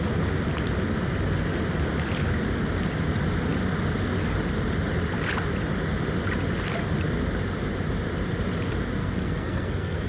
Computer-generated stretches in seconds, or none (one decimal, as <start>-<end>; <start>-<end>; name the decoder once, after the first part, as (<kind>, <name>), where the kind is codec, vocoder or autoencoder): 9.0-10.1 (codec, SNAC)